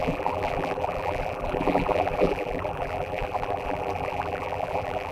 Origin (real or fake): fake